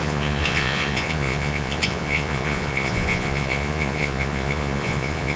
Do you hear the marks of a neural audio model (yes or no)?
yes